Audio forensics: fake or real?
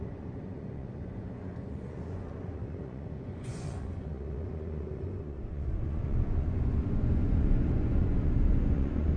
fake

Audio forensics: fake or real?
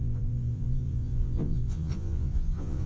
fake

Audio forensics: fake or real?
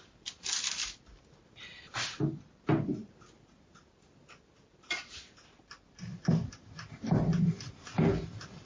real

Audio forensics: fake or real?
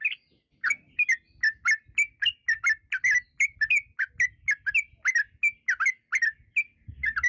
real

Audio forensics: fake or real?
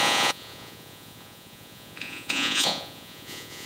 fake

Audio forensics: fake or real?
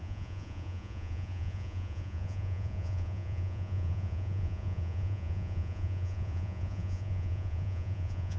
fake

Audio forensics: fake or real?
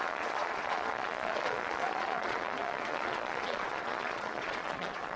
fake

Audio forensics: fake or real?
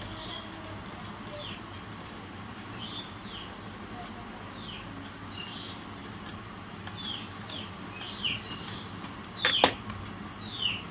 real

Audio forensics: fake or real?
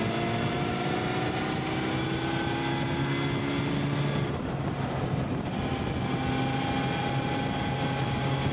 real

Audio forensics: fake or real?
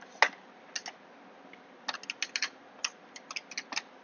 real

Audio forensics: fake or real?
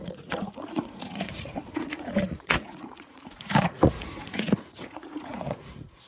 fake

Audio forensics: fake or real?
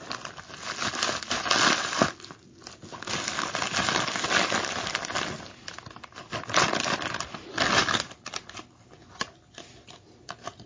real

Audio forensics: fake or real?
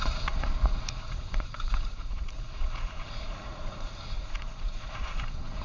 fake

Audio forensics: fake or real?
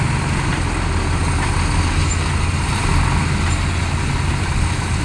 real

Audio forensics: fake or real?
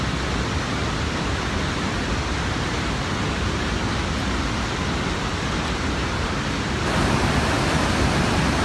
real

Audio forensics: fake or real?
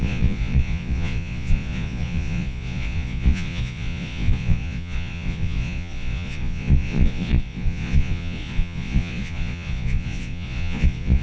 fake